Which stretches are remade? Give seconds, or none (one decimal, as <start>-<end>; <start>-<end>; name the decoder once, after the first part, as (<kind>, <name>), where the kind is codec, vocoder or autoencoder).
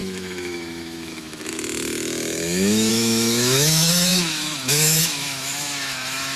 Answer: 0.0-6.4 (autoencoder, DAC-VAE)